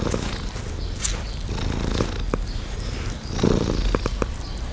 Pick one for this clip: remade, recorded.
recorded